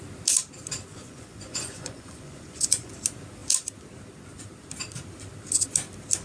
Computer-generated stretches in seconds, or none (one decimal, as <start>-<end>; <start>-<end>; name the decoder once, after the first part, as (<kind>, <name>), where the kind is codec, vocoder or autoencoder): 0.9-2.9 (vocoder, Vocos)